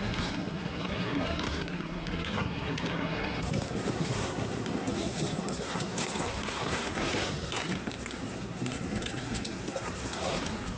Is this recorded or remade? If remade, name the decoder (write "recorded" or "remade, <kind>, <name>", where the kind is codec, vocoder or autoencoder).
remade, codec, SNAC